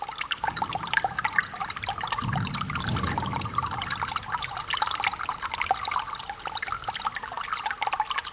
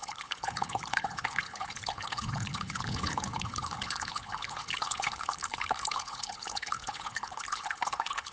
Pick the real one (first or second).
first